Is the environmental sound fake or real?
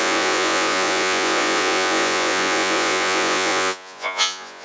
fake